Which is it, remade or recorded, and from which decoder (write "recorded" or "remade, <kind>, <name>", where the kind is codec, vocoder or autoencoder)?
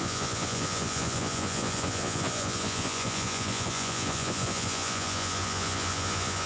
remade, vocoder, Vocos